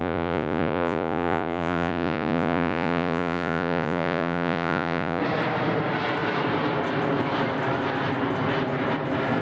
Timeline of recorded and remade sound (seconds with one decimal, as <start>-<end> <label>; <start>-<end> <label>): 0.0-5.2 remade; 5.2-9.4 recorded